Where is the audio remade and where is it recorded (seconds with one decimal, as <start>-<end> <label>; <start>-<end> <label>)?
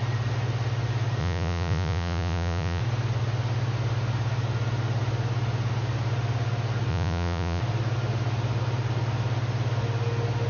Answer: 0.0-1.2 recorded; 1.2-2.8 remade; 2.8-6.9 recorded; 6.9-7.6 remade; 7.6-10.5 recorded